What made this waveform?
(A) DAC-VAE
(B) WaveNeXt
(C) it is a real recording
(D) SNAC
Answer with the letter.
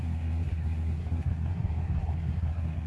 D